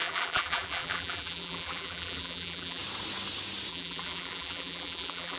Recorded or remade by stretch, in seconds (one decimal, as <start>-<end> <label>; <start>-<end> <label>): 0.0-2.8 remade; 2.8-3.7 recorded; 3.7-5.4 remade